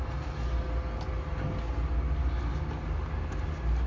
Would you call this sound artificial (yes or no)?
no